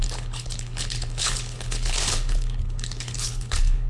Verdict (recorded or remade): remade